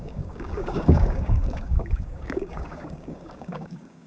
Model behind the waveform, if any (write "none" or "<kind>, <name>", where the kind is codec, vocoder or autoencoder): codec, DAC